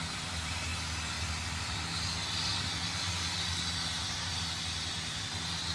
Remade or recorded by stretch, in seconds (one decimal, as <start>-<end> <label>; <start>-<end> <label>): 0.0-0.7 remade; 0.7-4.1 recorded; 4.1-5.7 remade